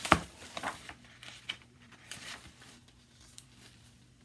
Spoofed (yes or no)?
yes